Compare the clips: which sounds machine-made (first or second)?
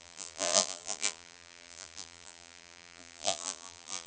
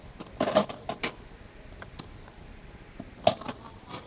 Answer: first